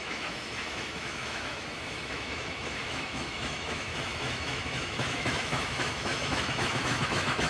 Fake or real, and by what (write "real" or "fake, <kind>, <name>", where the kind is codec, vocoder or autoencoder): fake, autoencoder, DAC-VAE